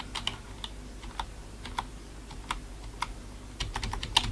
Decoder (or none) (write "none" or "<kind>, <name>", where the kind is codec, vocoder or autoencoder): none